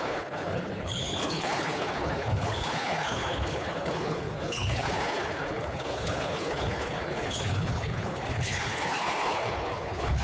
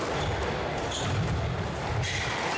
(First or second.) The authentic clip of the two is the second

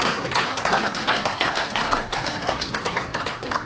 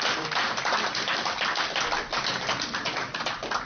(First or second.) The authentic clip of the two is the second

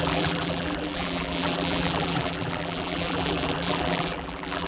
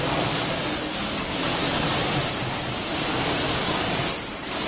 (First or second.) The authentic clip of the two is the second